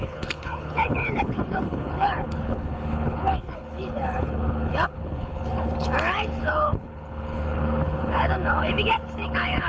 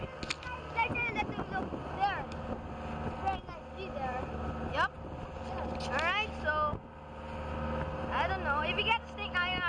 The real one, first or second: second